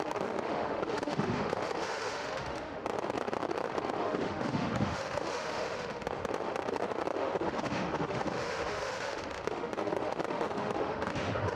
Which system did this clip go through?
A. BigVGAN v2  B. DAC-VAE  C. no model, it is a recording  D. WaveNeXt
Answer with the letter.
B